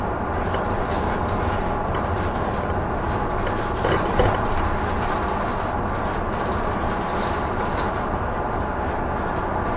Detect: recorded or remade recorded